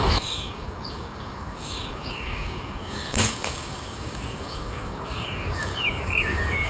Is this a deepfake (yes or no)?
yes